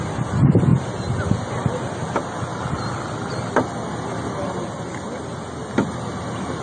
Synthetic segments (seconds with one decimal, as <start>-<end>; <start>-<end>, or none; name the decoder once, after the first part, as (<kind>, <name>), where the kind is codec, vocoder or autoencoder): 0.7-1.2 (vocoder, BigVGAN v2)